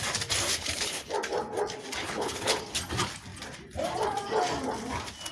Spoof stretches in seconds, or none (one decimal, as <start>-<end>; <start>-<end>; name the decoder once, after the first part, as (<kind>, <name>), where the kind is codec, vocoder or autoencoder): 0.5-1.1 (codec, HILCodec); 2.0-2.6